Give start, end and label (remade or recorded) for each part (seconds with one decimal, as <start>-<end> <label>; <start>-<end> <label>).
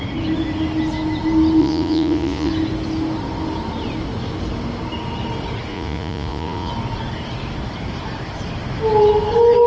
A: 0.0-1.6 recorded; 1.6-2.5 remade; 2.5-5.7 recorded; 5.7-6.7 remade; 6.7-9.7 recorded